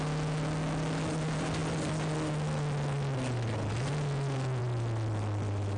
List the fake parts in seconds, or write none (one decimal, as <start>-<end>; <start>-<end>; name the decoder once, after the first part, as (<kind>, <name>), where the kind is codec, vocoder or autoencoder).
none